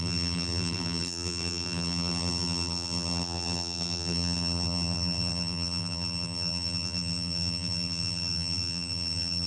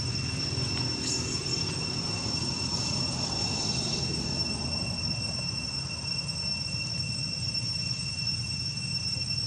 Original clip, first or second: second